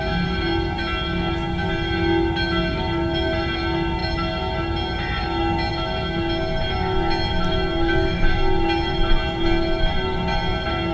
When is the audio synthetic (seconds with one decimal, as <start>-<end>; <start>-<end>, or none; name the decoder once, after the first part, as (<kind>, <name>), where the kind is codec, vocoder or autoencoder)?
none